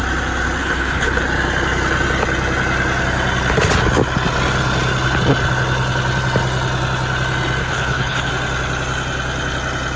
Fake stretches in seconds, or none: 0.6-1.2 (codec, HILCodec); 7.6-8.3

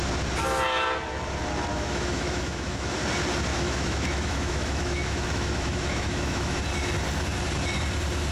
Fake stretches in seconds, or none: 1.7-2.9 (autoencoder, DAC-VAE); 3.5-6.6

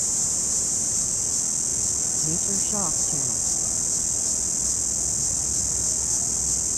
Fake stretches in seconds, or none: 0.0-1.2 (vocoder, BigVGAN v2)

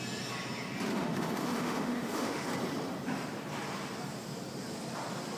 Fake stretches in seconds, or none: 0.9-2.5 (autoencoder, DAC-VAE)

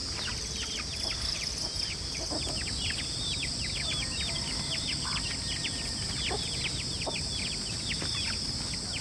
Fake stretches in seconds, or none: none

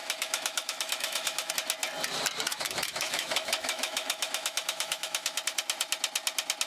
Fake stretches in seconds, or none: 0.0-1.5 (autoencoder, DAC-VAE); 2.5-5.4